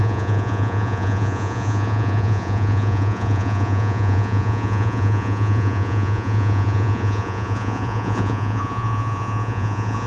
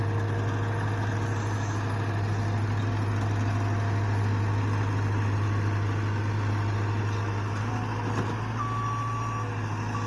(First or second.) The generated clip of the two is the first